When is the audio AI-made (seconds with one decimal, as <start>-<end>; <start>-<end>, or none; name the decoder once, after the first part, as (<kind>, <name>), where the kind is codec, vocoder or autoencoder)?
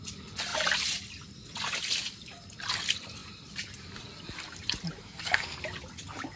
5.0-5.6 (codec, SNAC)